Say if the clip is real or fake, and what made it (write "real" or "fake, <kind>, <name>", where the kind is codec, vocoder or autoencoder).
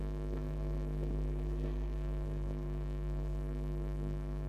fake, codec, SNAC